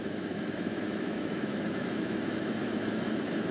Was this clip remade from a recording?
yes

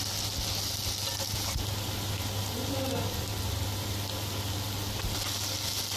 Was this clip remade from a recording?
no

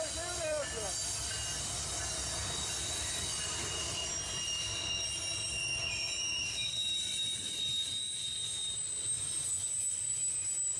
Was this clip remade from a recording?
no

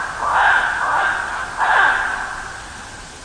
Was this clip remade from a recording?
no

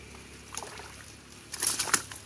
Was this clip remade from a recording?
no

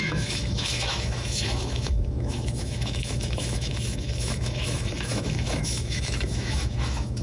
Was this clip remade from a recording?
yes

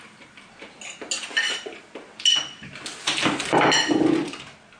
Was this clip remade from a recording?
no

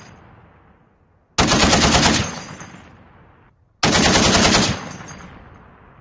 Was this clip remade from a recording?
no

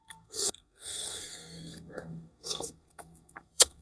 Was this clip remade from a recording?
yes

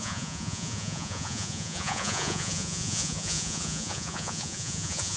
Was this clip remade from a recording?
yes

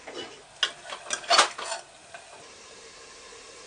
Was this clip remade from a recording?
no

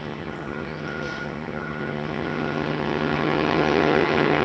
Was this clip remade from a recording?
yes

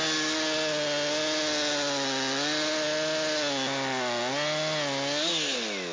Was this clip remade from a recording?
no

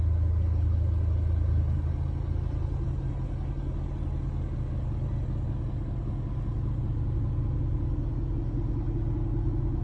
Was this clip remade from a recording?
no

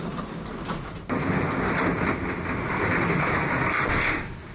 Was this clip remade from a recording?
no